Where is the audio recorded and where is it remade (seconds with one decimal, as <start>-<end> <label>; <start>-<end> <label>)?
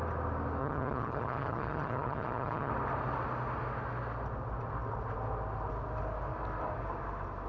0.0-0.6 recorded; 0.6-2.7 remade; 2.7-7.5 recorded